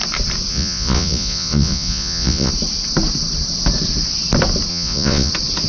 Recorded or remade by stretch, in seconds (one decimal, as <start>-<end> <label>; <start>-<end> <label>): 0.0-0.5 recorded; 0.5-2.5 remade; 2.5-4.7 recorded; 4.7-5.3 remade; 5.3-5.7 recorded